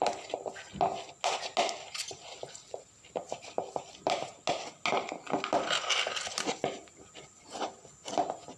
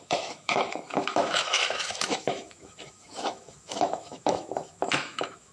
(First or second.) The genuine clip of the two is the first